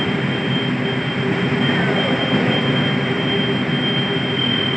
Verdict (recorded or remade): recorded